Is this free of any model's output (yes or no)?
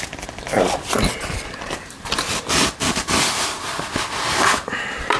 no